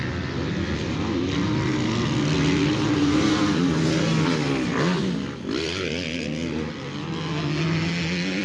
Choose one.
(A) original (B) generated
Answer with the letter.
A